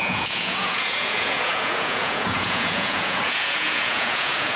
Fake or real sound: fake